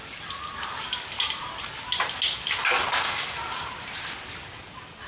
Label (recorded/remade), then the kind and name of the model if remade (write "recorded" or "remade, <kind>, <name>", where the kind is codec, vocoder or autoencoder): recorded